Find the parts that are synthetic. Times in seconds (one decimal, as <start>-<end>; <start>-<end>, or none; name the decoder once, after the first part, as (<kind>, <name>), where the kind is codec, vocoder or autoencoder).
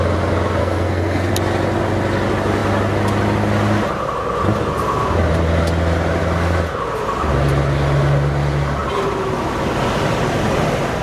0.6-1.3 (codec, SNAC)